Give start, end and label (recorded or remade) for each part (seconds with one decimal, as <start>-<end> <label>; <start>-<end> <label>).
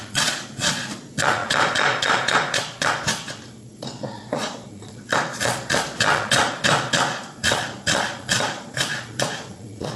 0.0-10.0 remade